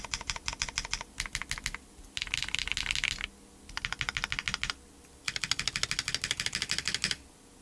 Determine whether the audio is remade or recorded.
recorded